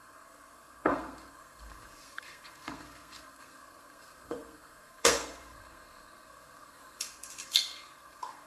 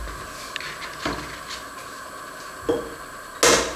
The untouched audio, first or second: second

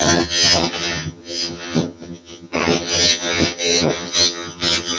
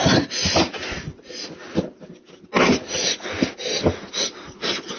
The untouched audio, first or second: second